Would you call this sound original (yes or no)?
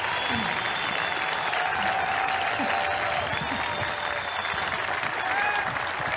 yes